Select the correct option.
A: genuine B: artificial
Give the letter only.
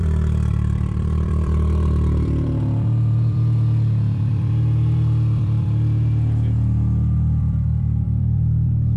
B